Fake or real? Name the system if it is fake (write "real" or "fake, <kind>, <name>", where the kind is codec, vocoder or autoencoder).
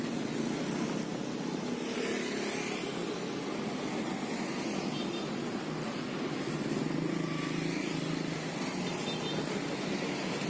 real